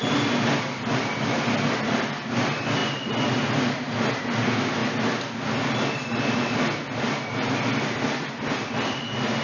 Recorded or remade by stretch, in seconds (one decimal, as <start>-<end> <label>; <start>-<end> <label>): 0.0-9.4 recorded